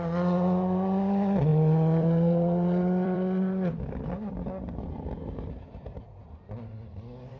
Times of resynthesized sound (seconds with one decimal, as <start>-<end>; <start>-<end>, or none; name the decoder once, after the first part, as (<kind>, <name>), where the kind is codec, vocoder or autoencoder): 1.5-5.5 (vocoder, BigVGAN v2)